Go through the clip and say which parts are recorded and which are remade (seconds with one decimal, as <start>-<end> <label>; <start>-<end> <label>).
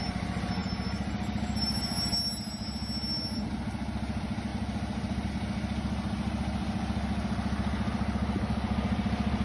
0.0-9.4 recorded